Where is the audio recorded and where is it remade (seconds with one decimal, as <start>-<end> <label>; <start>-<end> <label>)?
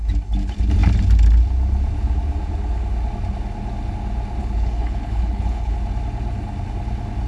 0.0-4.4 recorded; 4.4-5.7 remade; 5.7-7.3 recorded